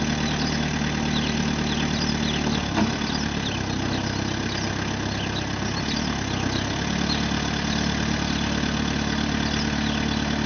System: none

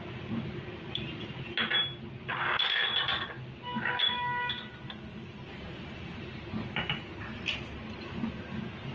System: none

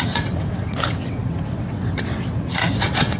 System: vocoder, WaveNeXt